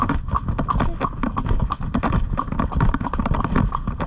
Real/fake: real